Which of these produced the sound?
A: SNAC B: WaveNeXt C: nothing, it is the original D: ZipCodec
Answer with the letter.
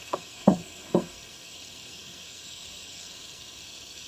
A